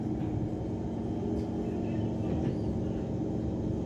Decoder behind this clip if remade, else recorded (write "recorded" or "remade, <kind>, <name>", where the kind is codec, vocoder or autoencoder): recorded